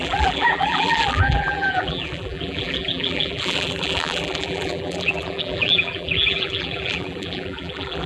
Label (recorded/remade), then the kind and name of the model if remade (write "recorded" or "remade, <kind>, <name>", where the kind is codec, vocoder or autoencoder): remade, vocoder, BigVGAN v2